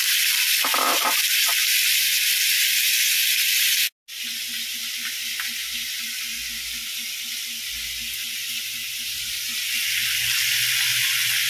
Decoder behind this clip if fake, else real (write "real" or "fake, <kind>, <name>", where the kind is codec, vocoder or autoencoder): real